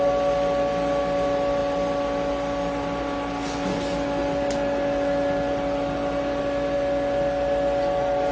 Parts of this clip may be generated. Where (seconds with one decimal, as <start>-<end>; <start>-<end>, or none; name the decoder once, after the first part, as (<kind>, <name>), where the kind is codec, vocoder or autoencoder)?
none